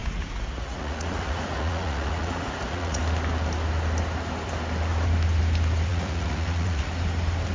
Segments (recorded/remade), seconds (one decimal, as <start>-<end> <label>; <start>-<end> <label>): 0.0-3.0 remade; 3.0-5.9 recorded; 5.9-6.9 remade; 6.9-7.5 recorded